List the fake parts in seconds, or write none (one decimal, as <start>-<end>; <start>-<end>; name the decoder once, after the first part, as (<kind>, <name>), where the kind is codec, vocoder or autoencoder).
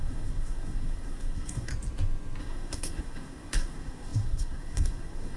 0.0-1.7 (codec, SNAC); 2.4-5.4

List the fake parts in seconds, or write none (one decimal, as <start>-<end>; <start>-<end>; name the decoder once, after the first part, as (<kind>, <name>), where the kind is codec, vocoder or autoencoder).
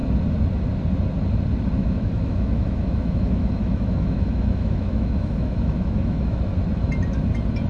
1.8-6.4 (autoencoder, DAC-VAE)